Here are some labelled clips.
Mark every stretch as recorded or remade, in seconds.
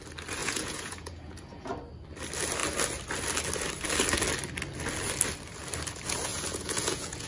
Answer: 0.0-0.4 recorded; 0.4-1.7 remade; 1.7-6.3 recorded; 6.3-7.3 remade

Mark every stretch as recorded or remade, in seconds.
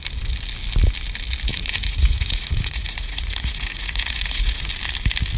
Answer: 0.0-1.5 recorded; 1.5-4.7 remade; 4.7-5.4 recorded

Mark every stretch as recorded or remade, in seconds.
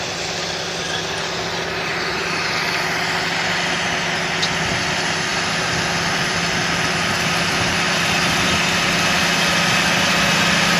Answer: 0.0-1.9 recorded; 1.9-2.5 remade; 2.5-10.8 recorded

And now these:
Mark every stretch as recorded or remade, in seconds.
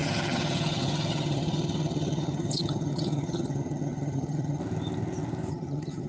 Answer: 0.0-4.6 remade; 4.6-5.5 recorded; 5.5-6.1 remade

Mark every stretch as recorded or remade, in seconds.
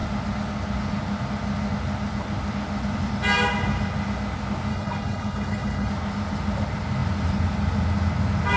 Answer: 0.0-4.7 recorded; 4.7-5.9 remade; 5.9-8.6 recorded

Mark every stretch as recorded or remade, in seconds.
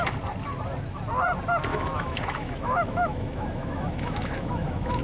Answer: 0.0-1.7 recorded; 1.7-5.0 remade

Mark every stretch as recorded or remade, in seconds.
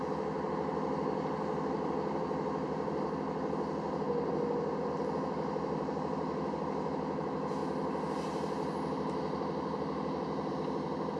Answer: 0.0-11.2 recorded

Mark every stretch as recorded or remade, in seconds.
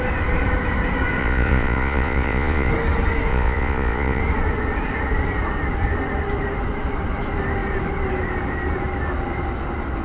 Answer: 0.0-1.2 recorded; 1.2-2.7 remade; 2.7-3.3 recorded; 3.3-4.2 remade; 4.2-10.0 recorded